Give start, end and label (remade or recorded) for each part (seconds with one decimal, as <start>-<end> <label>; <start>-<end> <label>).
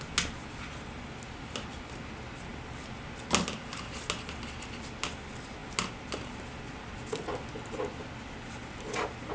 0.0-9.3 recorded